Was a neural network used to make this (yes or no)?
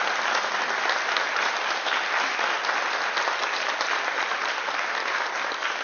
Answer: no